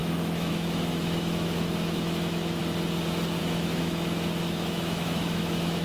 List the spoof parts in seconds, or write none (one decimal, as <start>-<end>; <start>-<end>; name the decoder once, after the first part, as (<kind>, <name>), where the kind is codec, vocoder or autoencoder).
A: 0.0-2.6 (autoencoder, DAC-VAE); 3.4-5.8